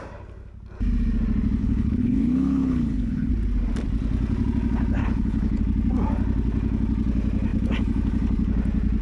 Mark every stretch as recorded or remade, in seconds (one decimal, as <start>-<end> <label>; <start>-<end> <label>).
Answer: 0.0-1.6 recorded; 1.6-3.3 remade; 3.3-5.0 recorded; 5.0-5.6 remade; 5.6-9.0 recorded